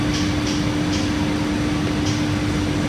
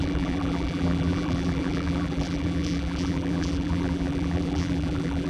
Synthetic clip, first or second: second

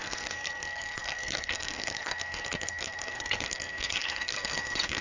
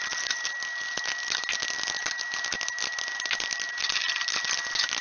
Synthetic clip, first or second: first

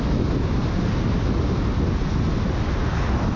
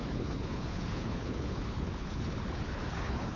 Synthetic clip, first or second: second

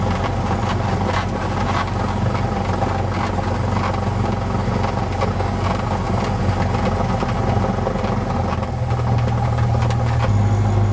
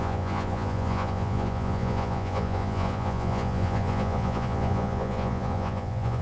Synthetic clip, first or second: second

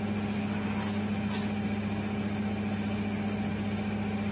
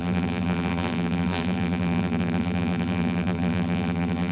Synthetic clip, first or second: second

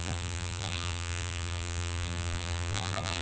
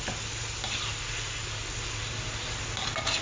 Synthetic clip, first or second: first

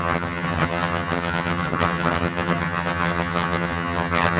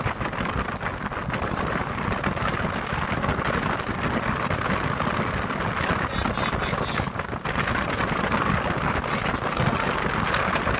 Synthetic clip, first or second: first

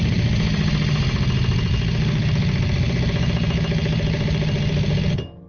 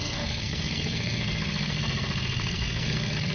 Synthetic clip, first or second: second